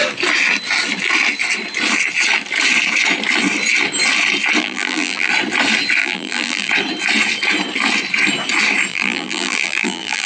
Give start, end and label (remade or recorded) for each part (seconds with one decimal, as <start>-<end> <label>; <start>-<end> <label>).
0.0-4.6 recorded; 4.6-5.3 remade; 5.3-6.0 recorded; 6.0-6.7 remade; 6.7-8.9 recorded; 8.9-10.3 remade